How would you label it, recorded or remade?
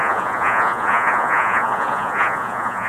remade